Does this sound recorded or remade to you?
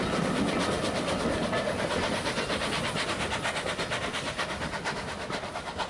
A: recorded